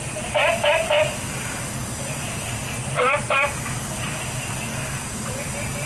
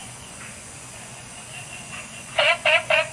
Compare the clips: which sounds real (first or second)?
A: first